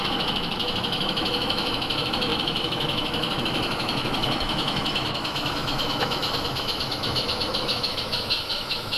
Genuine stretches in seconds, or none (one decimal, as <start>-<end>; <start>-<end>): none

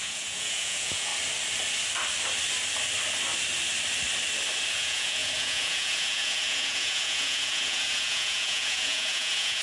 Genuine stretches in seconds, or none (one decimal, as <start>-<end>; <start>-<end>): 1.1-4.7

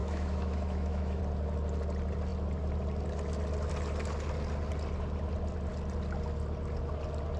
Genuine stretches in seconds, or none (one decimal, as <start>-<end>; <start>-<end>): 1.2-7.4

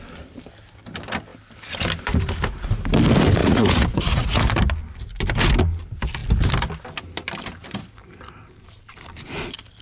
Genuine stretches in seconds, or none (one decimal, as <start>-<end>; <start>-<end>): 0.0-3.4; 4.4-9.8

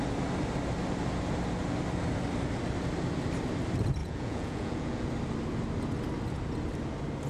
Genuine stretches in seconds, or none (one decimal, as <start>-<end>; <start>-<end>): 0.0-4.0; 5.1-7.3

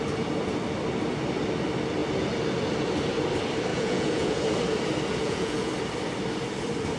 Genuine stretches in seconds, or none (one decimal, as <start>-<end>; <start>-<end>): 0.0-3.7; 4.4-5.2; 5.7-7.0

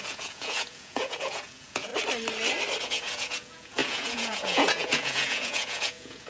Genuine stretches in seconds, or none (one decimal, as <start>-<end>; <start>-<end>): 1.9-2.8

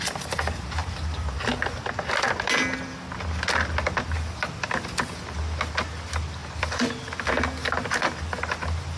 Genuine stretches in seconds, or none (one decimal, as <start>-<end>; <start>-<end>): 0.0-6.4; 6.9-9.0